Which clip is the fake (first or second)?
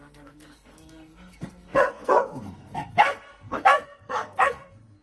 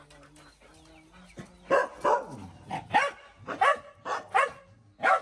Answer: first